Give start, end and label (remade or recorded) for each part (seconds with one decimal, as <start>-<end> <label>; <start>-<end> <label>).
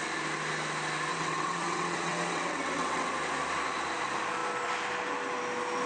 0.0-1.1 recorded; 1.1-3.1 remade; 3.1-5.9 recorded